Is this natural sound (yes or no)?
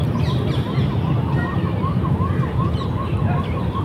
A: yes